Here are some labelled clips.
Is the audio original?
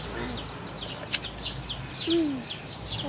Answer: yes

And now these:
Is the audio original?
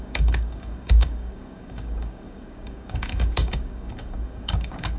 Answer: no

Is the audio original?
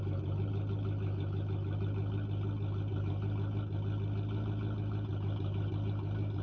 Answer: yes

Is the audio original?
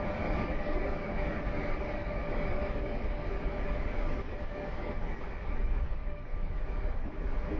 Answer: no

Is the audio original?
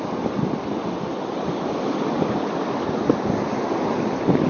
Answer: yes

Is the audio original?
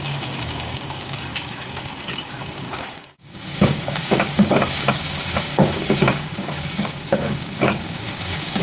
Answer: no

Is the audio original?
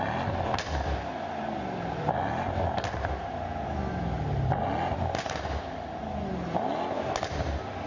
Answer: yes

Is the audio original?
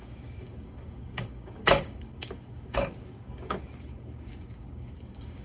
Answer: no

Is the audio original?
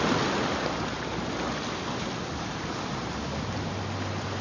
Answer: yes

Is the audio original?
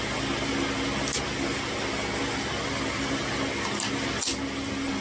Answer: yes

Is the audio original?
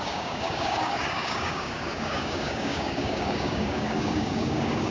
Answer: no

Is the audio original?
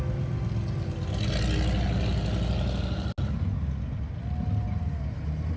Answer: yes